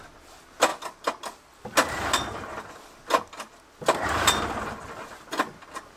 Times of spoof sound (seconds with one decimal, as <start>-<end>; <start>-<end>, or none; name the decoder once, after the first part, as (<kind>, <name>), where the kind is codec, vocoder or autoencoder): none